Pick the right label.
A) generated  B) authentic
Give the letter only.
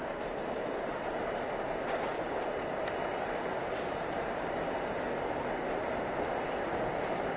B